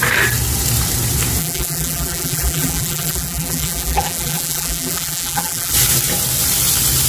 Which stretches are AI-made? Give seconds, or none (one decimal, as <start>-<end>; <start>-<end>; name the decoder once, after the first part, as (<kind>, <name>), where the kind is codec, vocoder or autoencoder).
1.4-5.7 (vocoder, BigVGAN v2)